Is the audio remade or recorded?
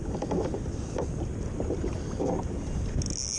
recorded